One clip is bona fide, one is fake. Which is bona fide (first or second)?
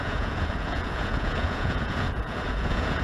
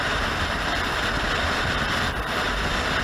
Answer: second